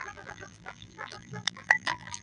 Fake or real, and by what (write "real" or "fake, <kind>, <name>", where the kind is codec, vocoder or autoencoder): fake, vocoder, BigVGAN v2